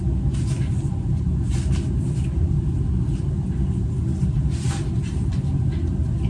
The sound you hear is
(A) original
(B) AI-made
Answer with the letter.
A